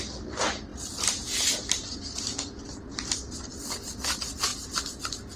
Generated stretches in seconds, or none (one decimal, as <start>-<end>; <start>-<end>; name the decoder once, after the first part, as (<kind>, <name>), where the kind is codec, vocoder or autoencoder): none